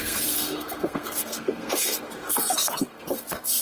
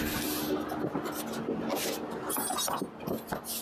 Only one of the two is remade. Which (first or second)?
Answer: first